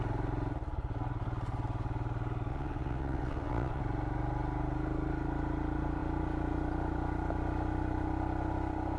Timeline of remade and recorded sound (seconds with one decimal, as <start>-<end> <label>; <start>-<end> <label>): 0.0-2.5 recorded; 2.5-3.8 remade; 3.8-9.0 recorded